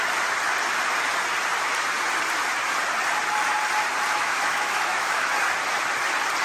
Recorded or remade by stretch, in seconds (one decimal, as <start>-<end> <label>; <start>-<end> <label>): 0.0-4.1 recorded; 4.1-5.3 remade; 5.3-6.4 recorded